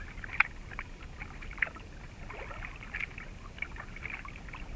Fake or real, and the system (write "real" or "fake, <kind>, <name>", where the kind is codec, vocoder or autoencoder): real